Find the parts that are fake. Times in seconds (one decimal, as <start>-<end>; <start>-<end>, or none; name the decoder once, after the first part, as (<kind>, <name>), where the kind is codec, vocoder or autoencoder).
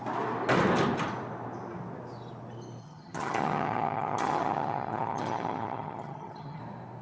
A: 2.8-6.6 (vocoder, HiFi-GAN)